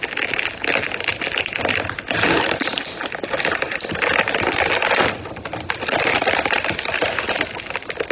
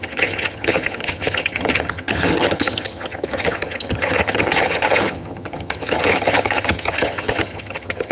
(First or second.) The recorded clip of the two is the first